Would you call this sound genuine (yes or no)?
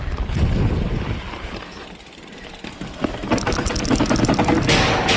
yes